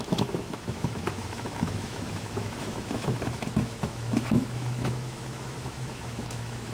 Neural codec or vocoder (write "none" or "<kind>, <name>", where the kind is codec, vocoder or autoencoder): autoencoder, DAC-VAE